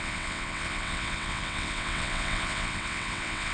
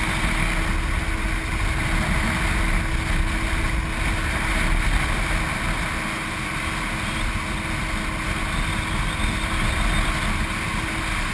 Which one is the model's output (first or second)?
first